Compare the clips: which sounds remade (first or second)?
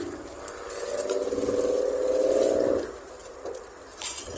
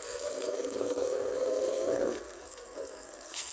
second